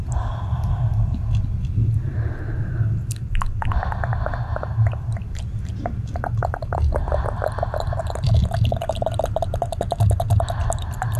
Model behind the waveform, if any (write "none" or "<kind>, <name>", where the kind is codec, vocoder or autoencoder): none